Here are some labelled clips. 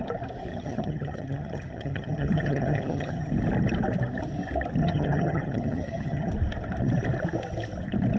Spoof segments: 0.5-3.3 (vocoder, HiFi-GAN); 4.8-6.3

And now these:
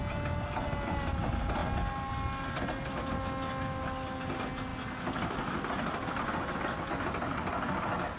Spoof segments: none

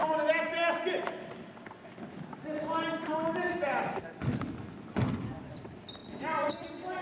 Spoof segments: none

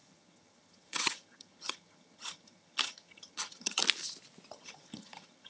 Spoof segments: 0.0-3.8 (vocoder, HiFi-GAN); 4.5-5.5

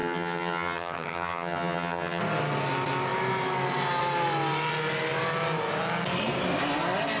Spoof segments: 0.0-2.2 (vocoder, HiFi-GAN)

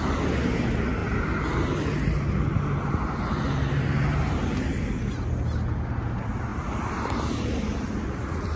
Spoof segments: none

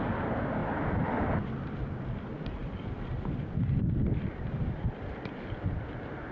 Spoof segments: none